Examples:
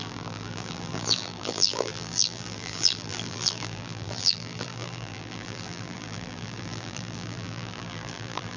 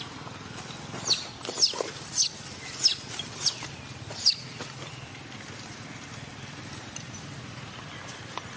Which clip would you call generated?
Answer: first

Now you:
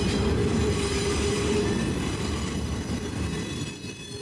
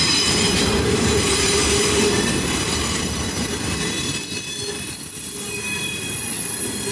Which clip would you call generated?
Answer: second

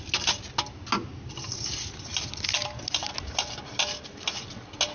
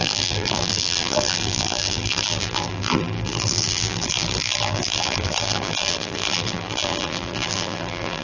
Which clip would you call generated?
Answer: second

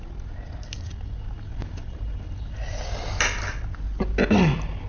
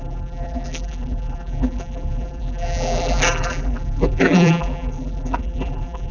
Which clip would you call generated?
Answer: second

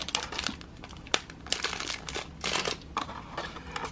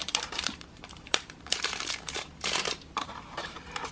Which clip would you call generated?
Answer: second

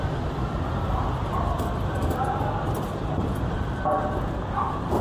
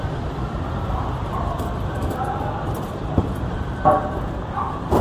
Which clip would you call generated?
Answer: second